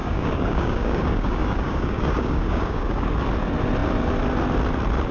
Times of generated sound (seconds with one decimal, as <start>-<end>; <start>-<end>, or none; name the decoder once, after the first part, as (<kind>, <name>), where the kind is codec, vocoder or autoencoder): 0.0-3.1 (codec, DAC)